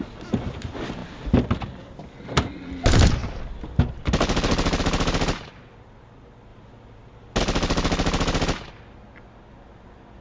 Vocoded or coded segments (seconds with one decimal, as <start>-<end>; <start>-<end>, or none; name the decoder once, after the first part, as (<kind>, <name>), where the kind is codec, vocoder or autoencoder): none

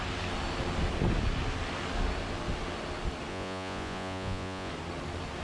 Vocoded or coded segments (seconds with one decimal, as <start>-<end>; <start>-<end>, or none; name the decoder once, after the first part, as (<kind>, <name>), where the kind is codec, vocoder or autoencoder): 3.3-4.7 (vocoder, Vocos)